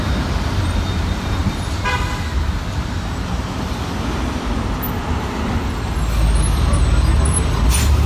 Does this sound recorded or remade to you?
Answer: recorded